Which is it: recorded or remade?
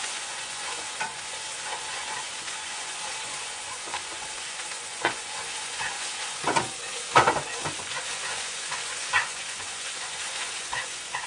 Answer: remade